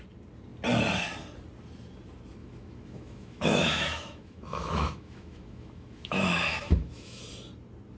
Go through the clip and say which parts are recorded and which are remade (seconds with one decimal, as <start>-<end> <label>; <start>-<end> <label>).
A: 0.0-2.4 recorded; 2.4-7.2 remade; 7.2-8.0 recorded